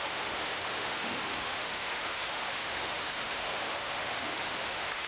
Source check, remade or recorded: remade